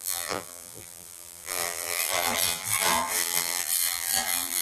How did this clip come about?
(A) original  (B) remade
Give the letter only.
B